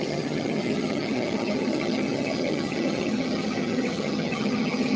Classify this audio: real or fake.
fake